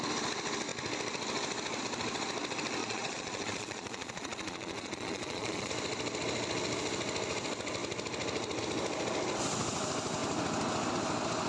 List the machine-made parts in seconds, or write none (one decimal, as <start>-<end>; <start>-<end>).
2.8-5.7